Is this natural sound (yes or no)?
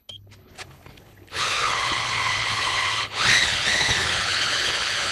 no